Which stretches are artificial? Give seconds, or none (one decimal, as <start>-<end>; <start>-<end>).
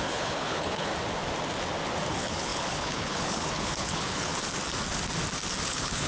0.0-0.9; 2.1-4.3; 5.6-6.1